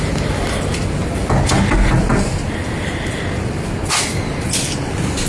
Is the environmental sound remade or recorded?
recorded